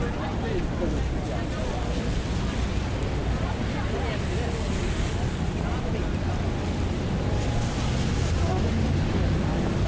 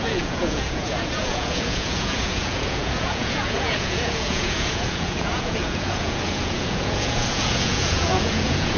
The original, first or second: first